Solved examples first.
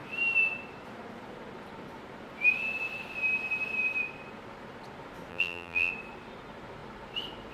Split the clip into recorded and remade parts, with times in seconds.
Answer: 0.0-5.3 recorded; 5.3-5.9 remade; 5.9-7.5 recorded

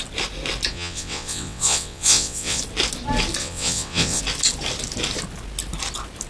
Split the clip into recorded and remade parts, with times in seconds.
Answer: 0.0-0.7 recorded; 0.7-2.6 remade; 2.6-3.4 recorded; 3.4-4.2 remade; 4.2-6.3 recorded

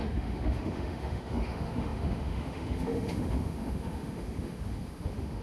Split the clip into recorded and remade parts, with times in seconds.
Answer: 0.0-5.4 remade

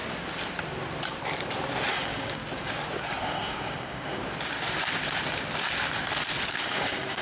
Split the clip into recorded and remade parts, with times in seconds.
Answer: 0.0-1.9 recorded; 1.9-2.4 remade; 2.4-3.2 recorded; 3.2-4.2 remade; 4.2-6.6 recorded; 6.6-7.2 remade

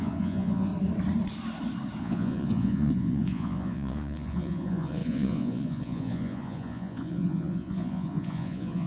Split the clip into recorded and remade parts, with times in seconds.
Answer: 0.0-0.7 remade; 0.7-2.0 recorded; 2.0-8.9 remade

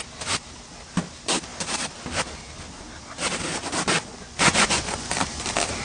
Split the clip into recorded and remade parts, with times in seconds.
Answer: 0.0-4.1 recorded; 4.1-5.1 remade; 5.1-5.8 recorded